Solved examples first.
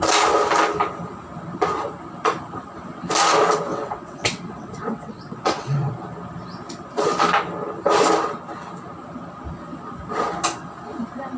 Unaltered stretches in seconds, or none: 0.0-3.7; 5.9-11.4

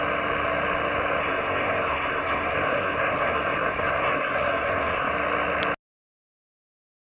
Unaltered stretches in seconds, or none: 0.0-1.2; 5.1-7.1

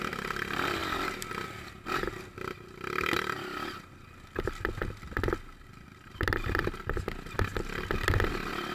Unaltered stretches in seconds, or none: 0.0-8.7

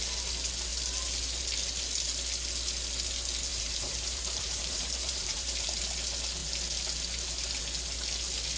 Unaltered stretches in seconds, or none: 0.0-3.5; 5.8-8.6

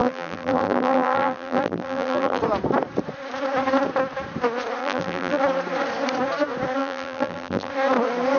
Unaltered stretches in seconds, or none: 2.4-4.8; 5.4-6.8; 7.7-8.4

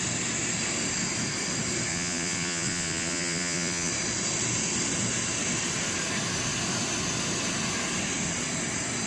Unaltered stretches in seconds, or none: 0.0-1.9; 3.9-9.1

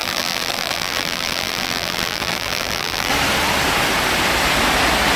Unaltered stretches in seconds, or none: 3.1-5.2